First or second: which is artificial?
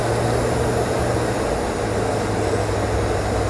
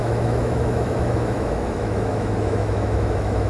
second